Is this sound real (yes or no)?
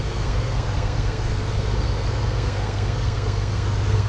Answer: no